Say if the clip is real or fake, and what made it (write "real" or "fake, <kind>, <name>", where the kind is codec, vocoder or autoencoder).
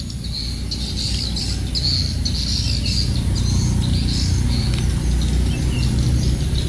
real